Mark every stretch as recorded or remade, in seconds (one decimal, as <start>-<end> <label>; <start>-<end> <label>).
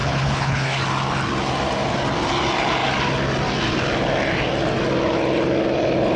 0.0-0.8 remade; 0.8-6.2 recorded